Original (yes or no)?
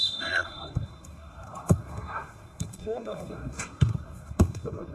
no